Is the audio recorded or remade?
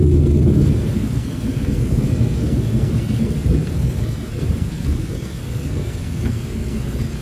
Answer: remade